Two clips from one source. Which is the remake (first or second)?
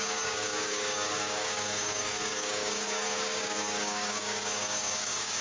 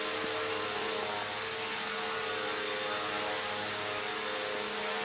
first